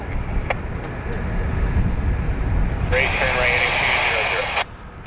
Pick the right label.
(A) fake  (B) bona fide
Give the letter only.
B